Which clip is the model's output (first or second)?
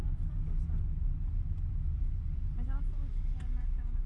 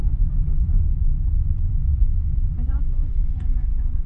second